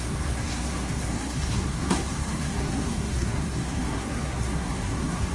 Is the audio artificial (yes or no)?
yes